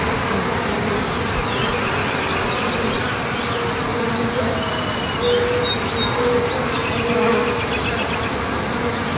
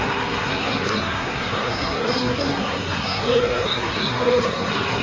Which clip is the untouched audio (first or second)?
first